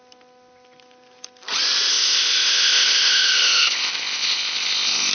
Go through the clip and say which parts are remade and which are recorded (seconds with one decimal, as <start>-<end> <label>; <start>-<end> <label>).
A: 0.0-1.9 recorded; 1.9-5.1 remade